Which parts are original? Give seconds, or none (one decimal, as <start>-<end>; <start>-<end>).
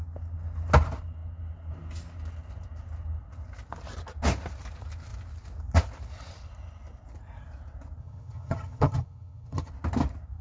0.0-8.0; 9.7-10.4